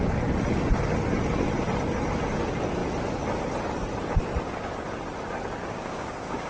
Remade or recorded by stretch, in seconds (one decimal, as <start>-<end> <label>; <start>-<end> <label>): 0.0-5.6 recorded; 5.6-6.5 remade